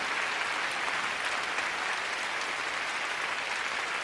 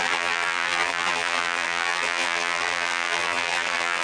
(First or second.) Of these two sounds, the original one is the first